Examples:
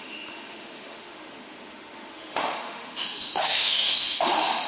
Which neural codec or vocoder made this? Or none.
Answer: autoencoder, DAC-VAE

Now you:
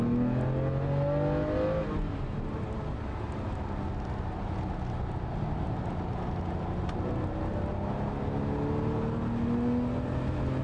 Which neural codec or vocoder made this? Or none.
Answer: none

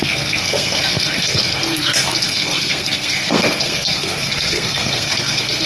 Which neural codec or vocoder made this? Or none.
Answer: codec, SNAC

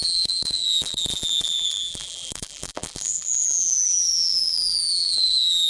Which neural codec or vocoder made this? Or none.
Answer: vocoder, BigVGAN v2